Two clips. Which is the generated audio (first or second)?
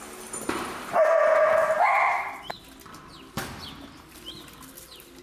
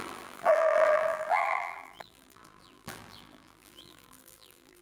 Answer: second